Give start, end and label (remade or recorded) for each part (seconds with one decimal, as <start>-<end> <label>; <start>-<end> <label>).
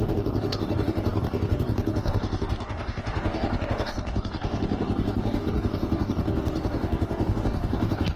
0.0-8.2 remade